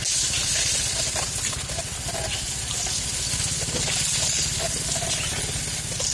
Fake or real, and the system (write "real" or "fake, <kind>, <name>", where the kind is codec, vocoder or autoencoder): real